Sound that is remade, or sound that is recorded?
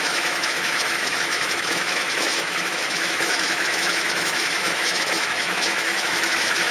remade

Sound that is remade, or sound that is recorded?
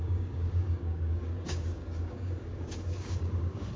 remade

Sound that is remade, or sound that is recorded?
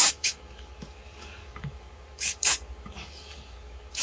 remade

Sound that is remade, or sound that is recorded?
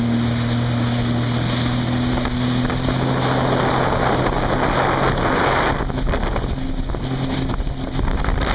recorded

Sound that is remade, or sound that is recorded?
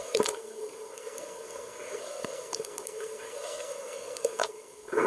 remade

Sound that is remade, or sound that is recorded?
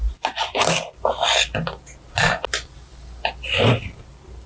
recorded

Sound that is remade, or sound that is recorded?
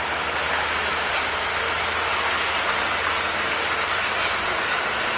recorded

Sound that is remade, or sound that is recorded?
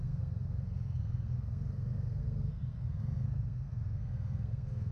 remade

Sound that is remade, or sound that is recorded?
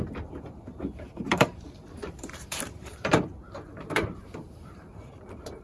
remade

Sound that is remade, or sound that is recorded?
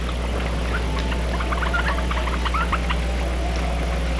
recorded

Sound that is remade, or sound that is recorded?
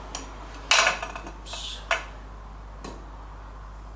recorded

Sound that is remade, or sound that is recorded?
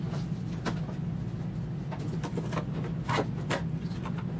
recorded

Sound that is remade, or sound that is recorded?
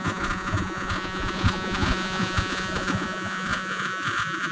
remade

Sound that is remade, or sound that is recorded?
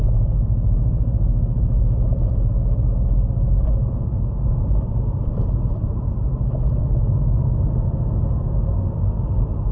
recorded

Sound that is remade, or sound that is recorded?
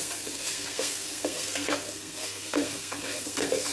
remade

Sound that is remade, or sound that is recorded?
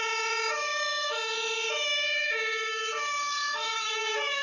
remade